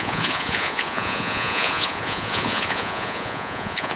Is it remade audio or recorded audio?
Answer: remade